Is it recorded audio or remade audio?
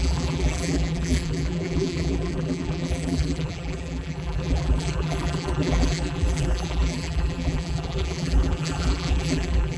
remade